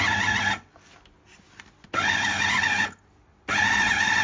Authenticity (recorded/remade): recorded